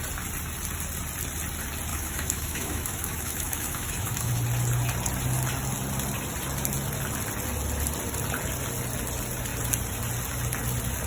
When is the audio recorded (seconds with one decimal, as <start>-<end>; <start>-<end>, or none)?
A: 0.0-1.9; 4.3-11.1